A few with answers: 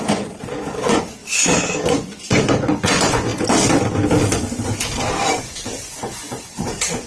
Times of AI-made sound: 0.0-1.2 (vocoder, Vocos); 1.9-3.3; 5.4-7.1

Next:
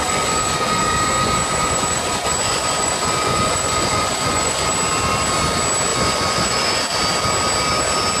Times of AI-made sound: 0.0-4.7 (vocoder, Vocos); 5.9-6.8

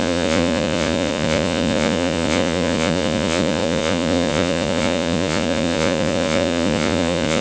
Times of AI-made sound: 0.0-7.4 (vocoder, Vocos)

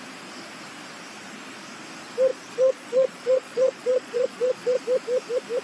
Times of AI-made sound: 2.3-4.8 (vocoder, Vocos)